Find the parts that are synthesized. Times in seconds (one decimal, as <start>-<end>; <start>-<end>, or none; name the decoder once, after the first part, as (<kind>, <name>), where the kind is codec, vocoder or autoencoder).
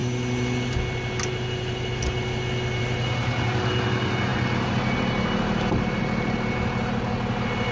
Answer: none